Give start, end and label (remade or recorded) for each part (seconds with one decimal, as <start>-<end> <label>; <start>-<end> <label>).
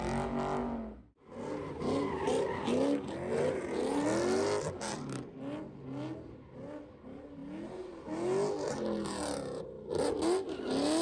0.0-11.0 recorded